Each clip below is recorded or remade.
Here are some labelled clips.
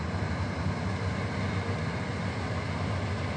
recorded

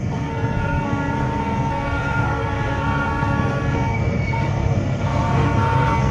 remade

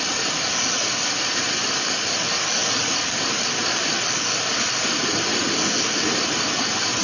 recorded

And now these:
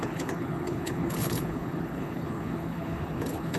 remade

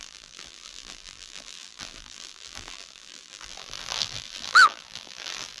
remade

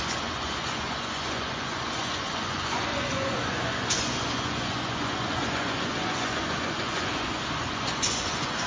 remade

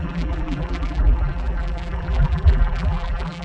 remade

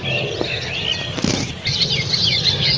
recorded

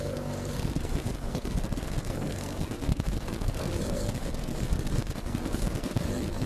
remade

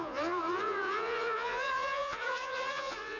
remade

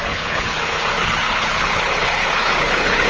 remade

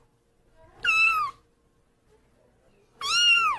recorded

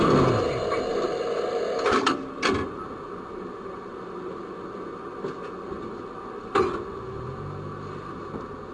recorded